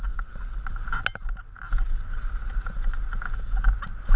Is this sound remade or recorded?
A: recorded